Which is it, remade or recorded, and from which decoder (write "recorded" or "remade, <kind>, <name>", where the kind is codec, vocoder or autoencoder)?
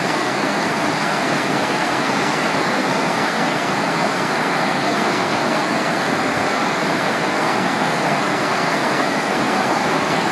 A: remade, codec, SNAC